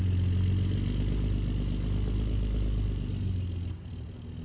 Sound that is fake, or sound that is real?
real